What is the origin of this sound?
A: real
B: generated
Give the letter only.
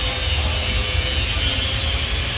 A